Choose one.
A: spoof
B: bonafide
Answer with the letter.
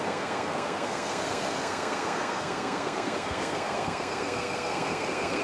A